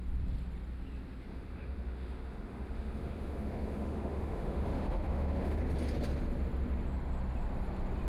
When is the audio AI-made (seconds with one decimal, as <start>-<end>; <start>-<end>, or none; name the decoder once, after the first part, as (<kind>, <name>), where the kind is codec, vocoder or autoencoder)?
1.3-5.6 (autoencoder, DAC-VAE)